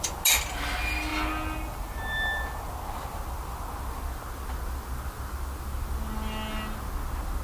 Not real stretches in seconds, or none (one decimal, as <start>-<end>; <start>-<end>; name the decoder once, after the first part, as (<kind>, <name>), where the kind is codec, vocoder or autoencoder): none